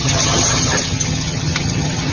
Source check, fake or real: fake